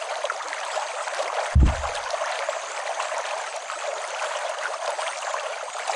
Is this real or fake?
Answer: real